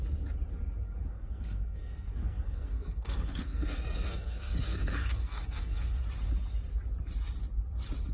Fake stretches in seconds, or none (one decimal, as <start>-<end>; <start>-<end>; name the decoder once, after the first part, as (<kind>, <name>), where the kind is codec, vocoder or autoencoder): 1.1-6.0 (codec, SNAC)